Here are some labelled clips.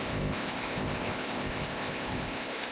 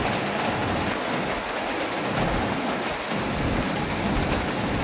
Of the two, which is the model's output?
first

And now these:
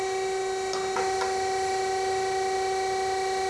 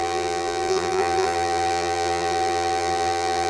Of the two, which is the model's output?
second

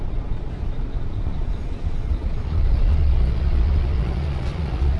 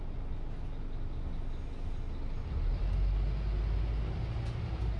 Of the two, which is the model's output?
first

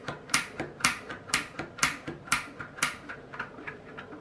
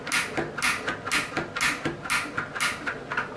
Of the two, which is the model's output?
first